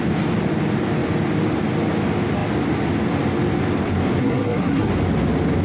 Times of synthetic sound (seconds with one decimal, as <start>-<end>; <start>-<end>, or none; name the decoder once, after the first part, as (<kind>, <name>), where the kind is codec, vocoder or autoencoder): 4.2-4.9 (codec, SNAC)